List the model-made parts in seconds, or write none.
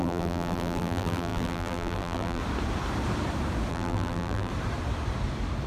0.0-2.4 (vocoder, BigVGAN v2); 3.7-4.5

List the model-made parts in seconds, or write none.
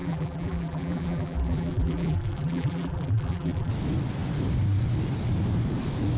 0.0-3.7 (vocoder, BigVGAN v2)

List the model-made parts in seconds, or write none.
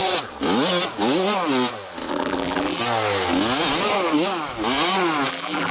2.1-2.8 (vocoder, BigVGAN v2); 5.3-5.7